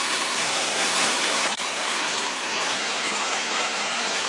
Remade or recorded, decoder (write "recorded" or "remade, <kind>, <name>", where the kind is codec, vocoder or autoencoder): remade, codec, SNAC